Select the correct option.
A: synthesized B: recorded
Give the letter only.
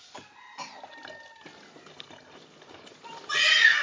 B